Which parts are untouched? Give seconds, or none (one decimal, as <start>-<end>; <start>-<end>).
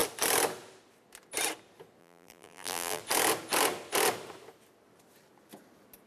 0.0-2.0; 3.0-6.1